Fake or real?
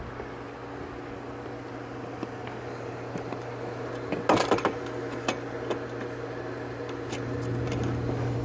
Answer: real